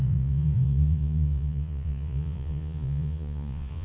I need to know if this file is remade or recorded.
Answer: remade